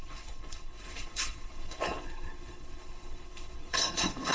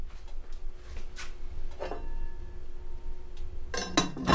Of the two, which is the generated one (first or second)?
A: first